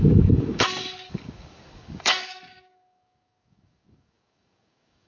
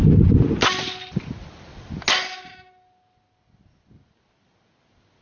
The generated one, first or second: first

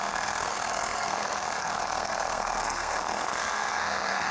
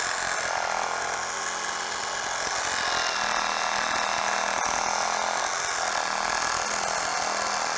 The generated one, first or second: first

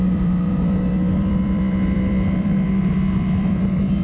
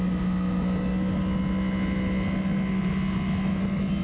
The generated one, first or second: first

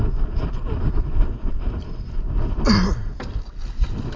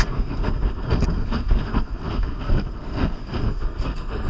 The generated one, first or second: second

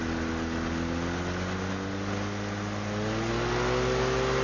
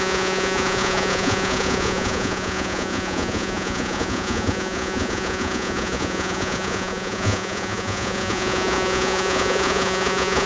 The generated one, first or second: second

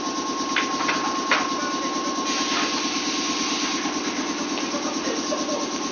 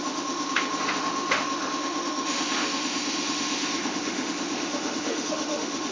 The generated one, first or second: second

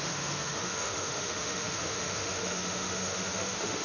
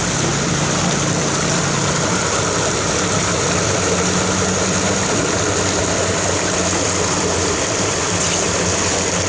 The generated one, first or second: first